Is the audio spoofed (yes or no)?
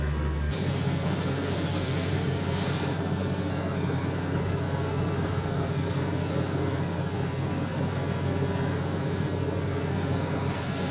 yes